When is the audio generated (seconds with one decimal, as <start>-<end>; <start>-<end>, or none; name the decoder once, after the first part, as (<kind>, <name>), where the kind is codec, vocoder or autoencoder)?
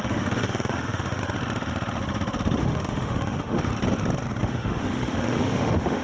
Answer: 0.0-1.2 (autoencoder, DAC-VAE); 2.6-3.7; 4.4-6.0